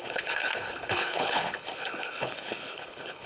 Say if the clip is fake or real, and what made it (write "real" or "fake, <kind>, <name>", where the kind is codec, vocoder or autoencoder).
fake, codec, HILCodec